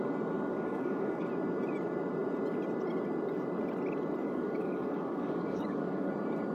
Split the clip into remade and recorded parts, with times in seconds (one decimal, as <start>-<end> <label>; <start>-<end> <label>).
0.0-0.5 recorded; 0.5-1.3 remade; 1.3-4.2 recorded; 4.2-6.1 remade; 6.1-6.5 recorded